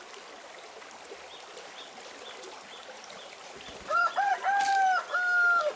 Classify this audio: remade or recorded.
recorded